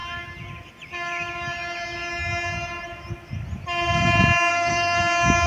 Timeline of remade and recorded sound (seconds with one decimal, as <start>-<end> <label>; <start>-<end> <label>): 0.0-4.5 recorded; 4.5-5.0 remade; 5.0-5.5 recorded